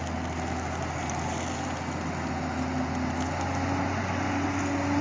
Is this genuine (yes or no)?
yes